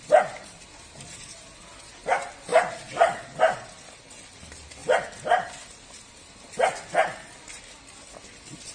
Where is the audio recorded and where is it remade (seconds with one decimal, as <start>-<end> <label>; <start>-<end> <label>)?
0.0-8.7 recorded